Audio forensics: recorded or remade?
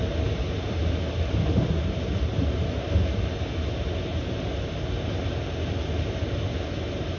recorded